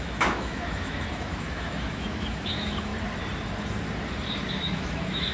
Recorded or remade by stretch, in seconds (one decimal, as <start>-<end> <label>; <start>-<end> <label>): 0.0-2.9 remade; 2.9-4.5 recorded; 4.5-5.3 remade